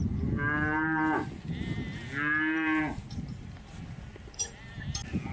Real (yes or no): yes